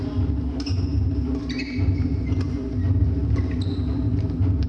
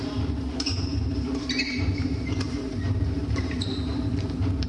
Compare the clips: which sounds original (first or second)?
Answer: first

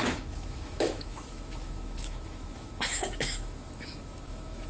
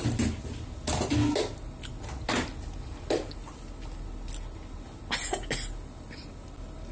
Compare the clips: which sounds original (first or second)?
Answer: second